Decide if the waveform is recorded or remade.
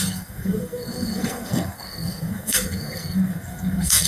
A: remade